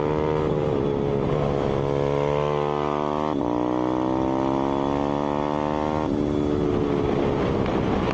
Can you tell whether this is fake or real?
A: real